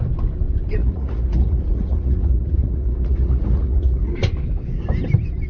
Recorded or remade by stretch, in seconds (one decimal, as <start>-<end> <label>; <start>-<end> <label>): 0.0-0.8 recorded; 0.8-4.1 remade; 4.1-5.5 recorded

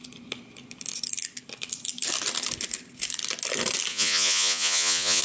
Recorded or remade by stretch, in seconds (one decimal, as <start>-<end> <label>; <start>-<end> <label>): 0.0-3.9 recorded; 3.9-5.2 remade

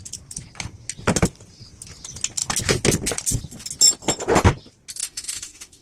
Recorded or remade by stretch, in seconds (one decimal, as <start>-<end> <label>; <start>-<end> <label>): 0.0-5.0 recorded; 5.0-5.8 remade

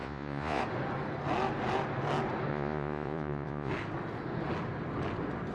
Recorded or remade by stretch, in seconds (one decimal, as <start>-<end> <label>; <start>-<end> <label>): 0.0-0.6 remade; 0.6-2.5 recorded; 2.5-3.7 remade; 3.7-5.5 recorded

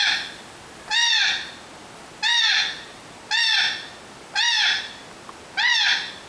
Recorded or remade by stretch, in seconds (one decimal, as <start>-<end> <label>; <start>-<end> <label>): 0.0-6.3 recorded

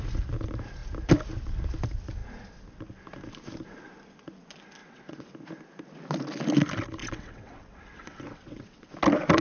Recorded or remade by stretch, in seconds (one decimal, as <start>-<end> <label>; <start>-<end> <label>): 0.0-4.8 recorded; 4.8-5.3 remade; 5.3-7.0 recorded; 7.0-8.9 remade; 8.9-9.4 recorded

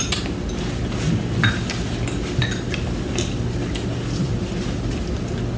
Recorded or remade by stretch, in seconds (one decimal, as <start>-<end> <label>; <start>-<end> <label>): 0.0-5.6 recorded